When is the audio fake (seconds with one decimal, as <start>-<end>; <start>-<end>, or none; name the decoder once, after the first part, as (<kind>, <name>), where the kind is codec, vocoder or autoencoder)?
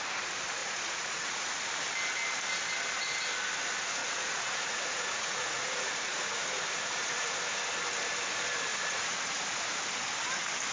0.6-1.6 (vocoder, Vocos); 4.0-7.4; 8.7-9.7